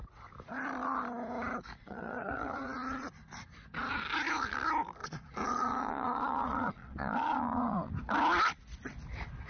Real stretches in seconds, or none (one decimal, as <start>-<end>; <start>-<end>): 0.0-1.8; 3.1-5.0; 7.9-9.5